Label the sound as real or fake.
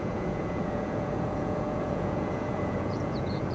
fake